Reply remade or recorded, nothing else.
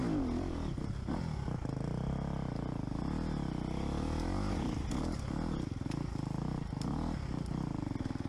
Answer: recorded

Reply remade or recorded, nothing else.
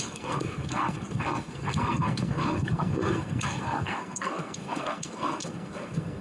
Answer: remade